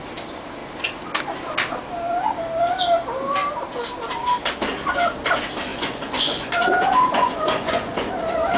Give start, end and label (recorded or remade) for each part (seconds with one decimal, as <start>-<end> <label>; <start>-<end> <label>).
0.0-5.7 recorded; 5.7-8.1 remade; 8.1-8.6 recorded